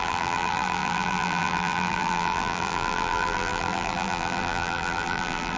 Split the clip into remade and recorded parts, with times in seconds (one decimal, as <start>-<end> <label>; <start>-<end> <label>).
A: 0.0-5.6 remade